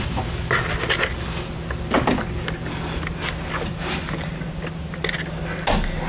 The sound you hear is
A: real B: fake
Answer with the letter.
A